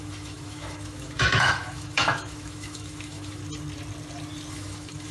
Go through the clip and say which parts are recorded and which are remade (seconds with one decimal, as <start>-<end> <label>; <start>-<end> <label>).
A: 0.0-3.4 remade; 3.4-4.5 recorded; 4.5-5.1 remade